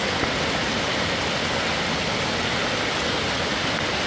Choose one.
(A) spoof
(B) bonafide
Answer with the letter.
B